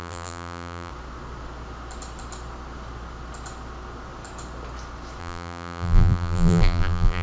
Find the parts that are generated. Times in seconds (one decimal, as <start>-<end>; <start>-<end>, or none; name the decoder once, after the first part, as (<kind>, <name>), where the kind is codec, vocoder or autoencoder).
0.0-0.9 (vocoder, BigVGAN v2); 5.2-7.2